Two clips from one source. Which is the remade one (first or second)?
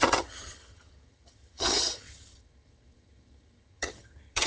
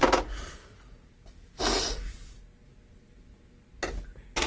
first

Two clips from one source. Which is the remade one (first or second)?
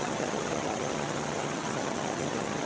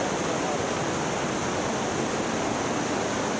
first